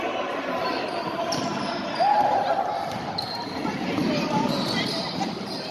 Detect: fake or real fake